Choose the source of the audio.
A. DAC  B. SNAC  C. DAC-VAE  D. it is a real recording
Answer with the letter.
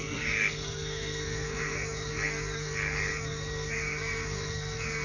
B